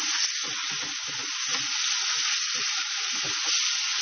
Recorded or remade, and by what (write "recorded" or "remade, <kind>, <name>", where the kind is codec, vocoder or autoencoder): recorded